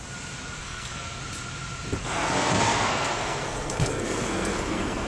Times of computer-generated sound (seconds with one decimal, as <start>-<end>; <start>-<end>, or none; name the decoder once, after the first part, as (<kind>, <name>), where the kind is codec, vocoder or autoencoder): 0.6-1.2 (codec, SNAC); 2.0-5.1